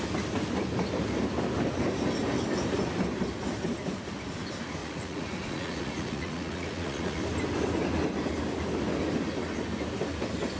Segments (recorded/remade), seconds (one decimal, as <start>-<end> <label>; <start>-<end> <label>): 0.0-4.8 recorded; 4.8-7.2 remade; 7.2-10.6 recorded